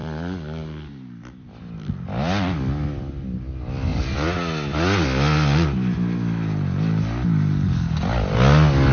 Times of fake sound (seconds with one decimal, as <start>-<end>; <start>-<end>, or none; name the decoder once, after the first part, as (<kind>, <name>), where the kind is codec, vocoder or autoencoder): none